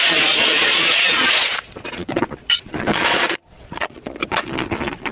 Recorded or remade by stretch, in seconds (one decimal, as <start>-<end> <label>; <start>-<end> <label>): 0.0-5.1 remade